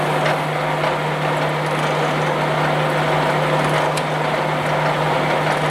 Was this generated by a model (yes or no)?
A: no